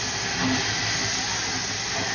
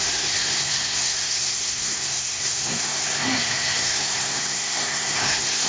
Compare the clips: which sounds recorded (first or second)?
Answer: first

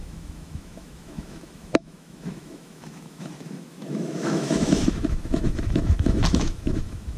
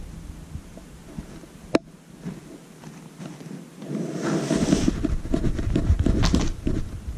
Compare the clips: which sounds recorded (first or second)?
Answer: second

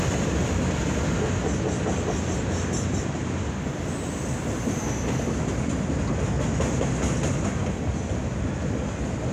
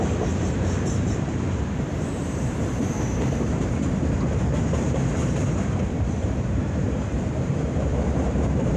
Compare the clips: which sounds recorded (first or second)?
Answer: first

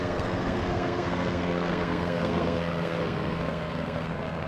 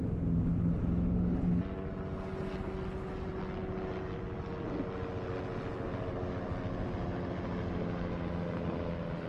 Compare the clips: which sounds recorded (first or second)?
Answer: second